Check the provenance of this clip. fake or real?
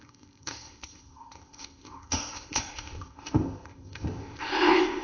fake